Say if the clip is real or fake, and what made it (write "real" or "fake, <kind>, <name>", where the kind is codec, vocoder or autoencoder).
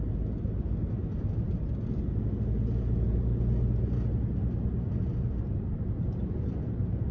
real